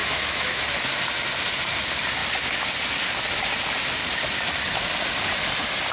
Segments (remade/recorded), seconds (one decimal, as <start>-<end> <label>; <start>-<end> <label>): 0.0-0.6 remade; 0.6-5.9 recorded